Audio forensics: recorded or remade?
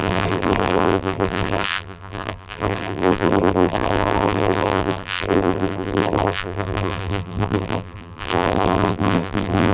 remade